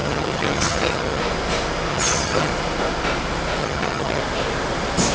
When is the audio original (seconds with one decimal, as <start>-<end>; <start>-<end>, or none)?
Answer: 1.2-1.9; 2.5-3.6; 4.2-5.1